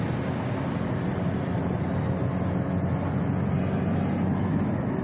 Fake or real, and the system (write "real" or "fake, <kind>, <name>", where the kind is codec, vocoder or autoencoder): real